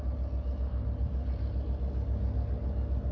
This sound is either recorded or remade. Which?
recorded